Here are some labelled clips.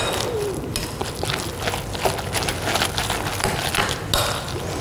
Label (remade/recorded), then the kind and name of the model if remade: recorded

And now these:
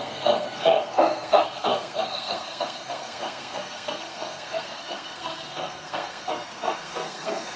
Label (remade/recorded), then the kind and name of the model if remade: remade, codec, SNAC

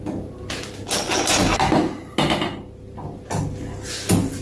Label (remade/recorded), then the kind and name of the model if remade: recorded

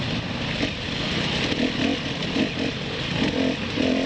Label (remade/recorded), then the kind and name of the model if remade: recorded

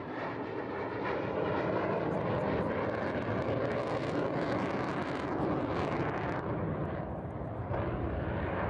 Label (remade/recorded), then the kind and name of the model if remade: recorded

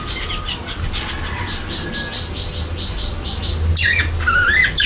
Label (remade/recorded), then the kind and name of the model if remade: recorded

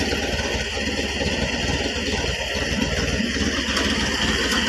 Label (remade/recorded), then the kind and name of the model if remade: recorded